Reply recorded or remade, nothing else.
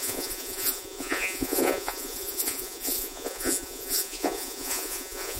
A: remade